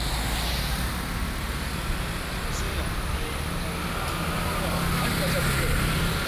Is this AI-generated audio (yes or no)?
no